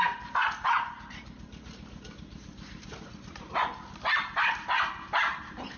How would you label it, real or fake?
fake